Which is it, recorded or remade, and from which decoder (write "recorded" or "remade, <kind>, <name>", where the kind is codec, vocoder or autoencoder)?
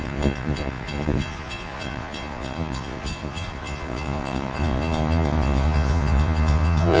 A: remade, vocoder, Vocos